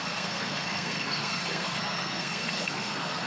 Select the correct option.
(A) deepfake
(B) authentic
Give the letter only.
A